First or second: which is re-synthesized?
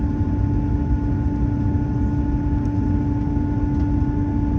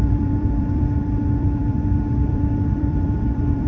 second